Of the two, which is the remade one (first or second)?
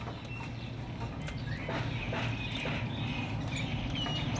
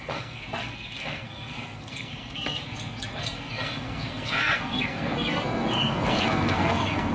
second